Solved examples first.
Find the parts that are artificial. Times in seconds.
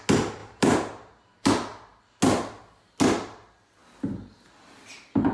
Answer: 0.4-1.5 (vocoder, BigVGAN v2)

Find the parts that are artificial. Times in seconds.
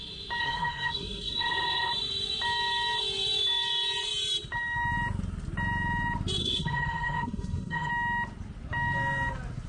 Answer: 0.4-1.9 (codec, SNAC); 6.4-7.9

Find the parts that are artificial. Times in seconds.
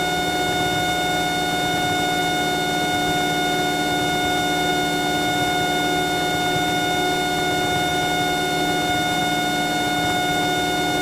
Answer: none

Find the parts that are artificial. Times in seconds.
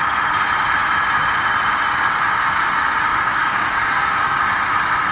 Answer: 3.1-4.4 (codec, DAC)